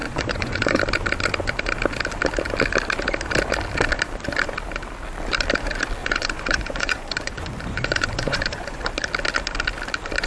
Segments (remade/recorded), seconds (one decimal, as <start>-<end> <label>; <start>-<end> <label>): 0.0-0.8 remade; 0.8-6.0 recorded; 6.0-8.9 remade; 8.9-10.3 recorded